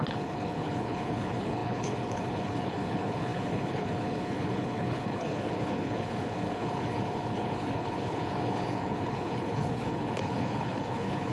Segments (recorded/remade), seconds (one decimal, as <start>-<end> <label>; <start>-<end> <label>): 0.0-11.3 remade